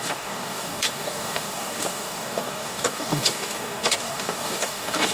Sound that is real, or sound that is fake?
fake